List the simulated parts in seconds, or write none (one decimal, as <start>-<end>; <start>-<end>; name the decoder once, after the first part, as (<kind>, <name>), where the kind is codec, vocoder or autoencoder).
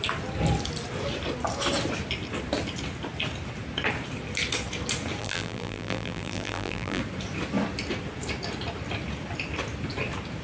5.2-7.0 (vocoder, BigVGAN v2)